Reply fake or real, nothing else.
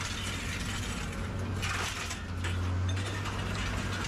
real